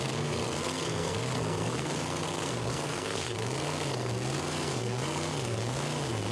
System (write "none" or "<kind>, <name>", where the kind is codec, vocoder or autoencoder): codec, SNAC